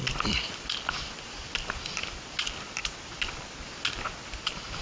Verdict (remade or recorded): recorded